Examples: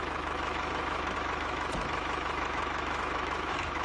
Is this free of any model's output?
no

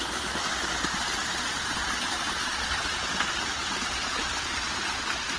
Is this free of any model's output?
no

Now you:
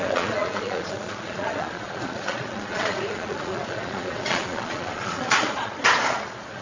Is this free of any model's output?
no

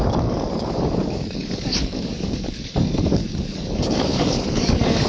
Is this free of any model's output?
no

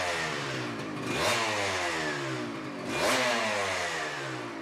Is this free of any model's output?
yes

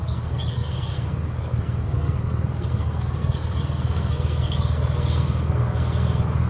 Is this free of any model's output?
no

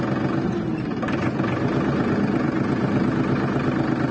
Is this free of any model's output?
yes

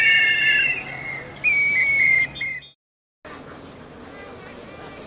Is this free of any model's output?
yes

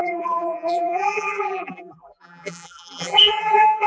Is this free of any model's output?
no